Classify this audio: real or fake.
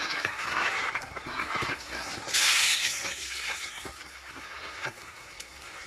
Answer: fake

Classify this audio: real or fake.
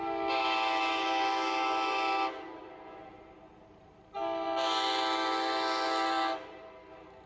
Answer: real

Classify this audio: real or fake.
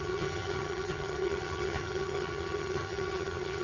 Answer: fake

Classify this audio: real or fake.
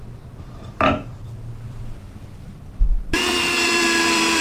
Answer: fake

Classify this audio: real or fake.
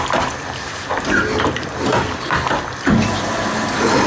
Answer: real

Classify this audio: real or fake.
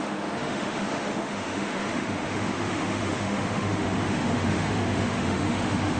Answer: fake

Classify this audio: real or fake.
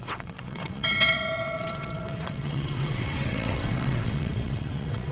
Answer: fake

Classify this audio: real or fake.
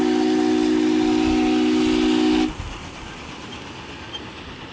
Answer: real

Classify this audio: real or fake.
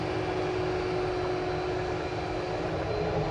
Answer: real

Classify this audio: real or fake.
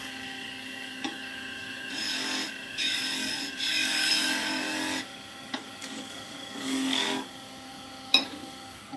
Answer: fake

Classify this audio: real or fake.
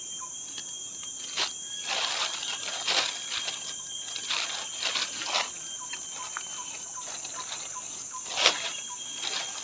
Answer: real